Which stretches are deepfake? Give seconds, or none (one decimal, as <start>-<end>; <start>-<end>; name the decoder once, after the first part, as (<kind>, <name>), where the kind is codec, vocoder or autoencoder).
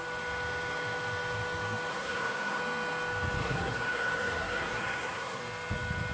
1.9-2.6 (codec, SNAC); 3.4-5.4